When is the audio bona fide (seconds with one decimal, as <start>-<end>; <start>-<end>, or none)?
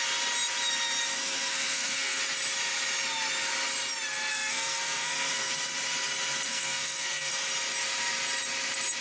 0.0-1.1; 2.2-4.3; 5.5-6.5; 7.3-9.0